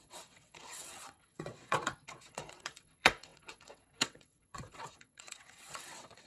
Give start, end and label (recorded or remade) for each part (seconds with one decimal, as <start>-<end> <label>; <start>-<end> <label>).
0.0-6.3 remade